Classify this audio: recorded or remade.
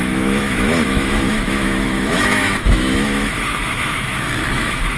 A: remade